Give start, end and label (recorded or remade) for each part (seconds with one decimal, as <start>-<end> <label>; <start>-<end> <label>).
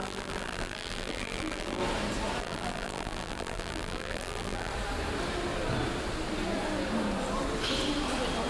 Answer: 0.0-1.8 remade; 1.8-2.4 recorded; 2.4-4.7 remade; 4.7-8.5 recorded